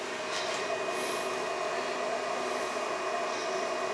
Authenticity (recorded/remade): recorded